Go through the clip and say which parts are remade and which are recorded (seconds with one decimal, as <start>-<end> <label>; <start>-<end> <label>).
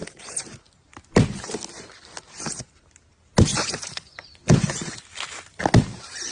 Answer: 0.0-3.5 recorded; 3.5-5.0 remade; 5.0-6.3 recorded